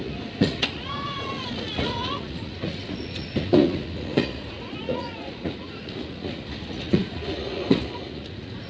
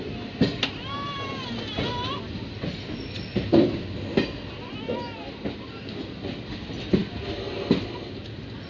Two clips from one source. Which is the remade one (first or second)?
first